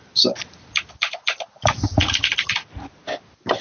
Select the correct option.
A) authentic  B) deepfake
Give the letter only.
A